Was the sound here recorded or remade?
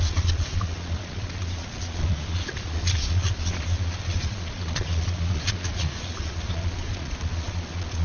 remade